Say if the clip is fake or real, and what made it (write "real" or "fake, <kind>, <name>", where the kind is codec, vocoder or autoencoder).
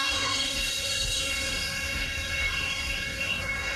fake, codec, SNAC